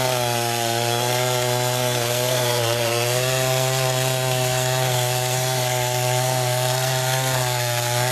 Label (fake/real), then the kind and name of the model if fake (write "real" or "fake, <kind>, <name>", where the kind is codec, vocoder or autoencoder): fake, codec, SNAC